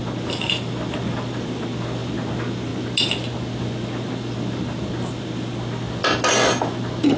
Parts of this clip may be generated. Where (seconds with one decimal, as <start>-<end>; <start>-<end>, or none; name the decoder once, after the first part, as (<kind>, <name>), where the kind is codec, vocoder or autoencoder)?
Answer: none